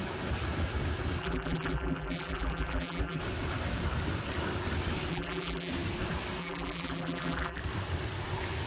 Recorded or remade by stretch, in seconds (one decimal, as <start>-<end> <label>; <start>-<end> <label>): 0.0-1.2 recorded; 1.2-3.2 remade; 3.2-5.1 recorded; 5.1-5.7 remade; 5.7-6.4 recorded; 6.4-7.6 remade; 7.6-8.7 recorded